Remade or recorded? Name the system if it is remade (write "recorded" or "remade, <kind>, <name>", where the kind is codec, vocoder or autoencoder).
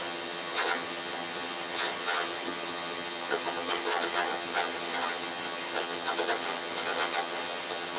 remade, vocoder, HiFi-GAN